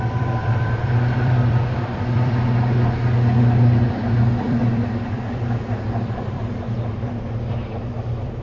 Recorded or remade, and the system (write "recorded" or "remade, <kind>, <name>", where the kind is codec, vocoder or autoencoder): remade, vocoder, BigVGAN v2